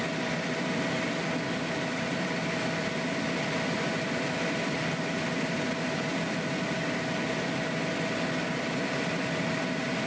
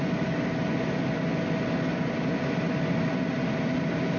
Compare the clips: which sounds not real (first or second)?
first